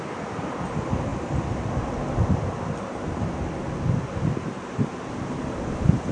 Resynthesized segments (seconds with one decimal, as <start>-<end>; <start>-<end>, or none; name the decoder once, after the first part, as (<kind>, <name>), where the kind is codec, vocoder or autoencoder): none